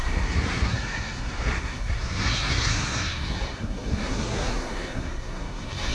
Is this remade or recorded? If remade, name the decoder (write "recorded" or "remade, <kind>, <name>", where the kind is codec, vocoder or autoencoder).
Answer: remade, codec, SNAC